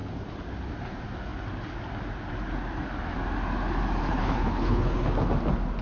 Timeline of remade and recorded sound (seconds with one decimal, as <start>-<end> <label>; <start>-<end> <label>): 0.0-4.0 recorded; 4.0-5.1 remade; 5.1-5.8 recorded